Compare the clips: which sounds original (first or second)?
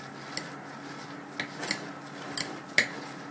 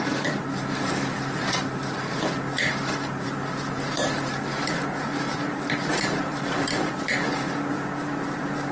first